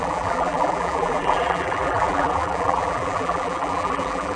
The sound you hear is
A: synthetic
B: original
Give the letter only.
A